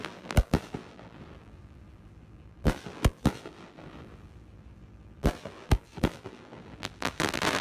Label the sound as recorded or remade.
remade